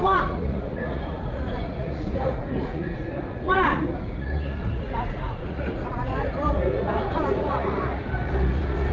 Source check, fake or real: fake